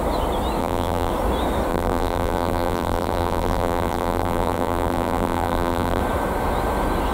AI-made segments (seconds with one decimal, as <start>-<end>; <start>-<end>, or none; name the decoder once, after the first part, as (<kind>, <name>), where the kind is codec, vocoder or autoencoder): 0.6-1.1 (vocoder, BigVGAN v2); 1.7-6.0